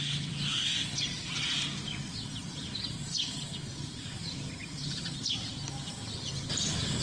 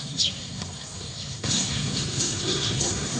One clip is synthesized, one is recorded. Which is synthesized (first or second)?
second